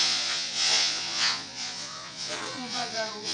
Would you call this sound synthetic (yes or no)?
yes